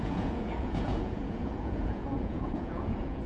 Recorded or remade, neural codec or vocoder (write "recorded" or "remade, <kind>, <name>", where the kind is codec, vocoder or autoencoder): remade, vocoder, Vocos